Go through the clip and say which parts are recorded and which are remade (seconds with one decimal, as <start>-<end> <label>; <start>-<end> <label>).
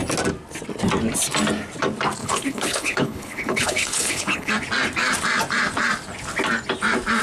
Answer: 0.0-2.2 recorded; 2.2-4.5 remade; 4.5-7.2 recorded